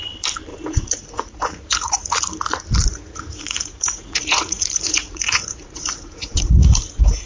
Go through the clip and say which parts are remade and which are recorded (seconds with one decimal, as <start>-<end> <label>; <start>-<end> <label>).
0.0-0.5 recorded; 0.5-2.1 remade; 2.1-2.9 recorded; 2.9-7.3 remade